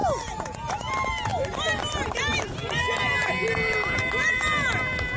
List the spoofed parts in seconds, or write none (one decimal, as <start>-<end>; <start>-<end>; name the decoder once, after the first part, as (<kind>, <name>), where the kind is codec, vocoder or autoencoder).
0.0-0.9 (vocoder, Vocos)